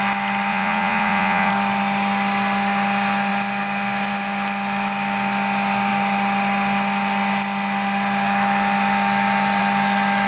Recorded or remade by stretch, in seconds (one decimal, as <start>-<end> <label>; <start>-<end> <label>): 0.0-0.5 recorded; 0.5-1.5 remade; 1.5-10.3 recorded